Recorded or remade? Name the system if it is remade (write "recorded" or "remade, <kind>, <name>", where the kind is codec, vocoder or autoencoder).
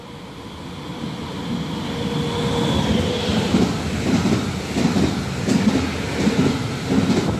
recorded